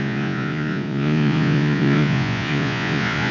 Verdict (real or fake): fake